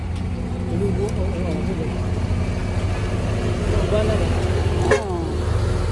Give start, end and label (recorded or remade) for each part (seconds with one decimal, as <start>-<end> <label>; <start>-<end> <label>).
0.0-5.9 recorded